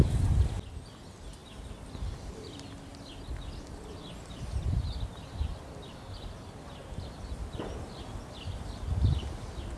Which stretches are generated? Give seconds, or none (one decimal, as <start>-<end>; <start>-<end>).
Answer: none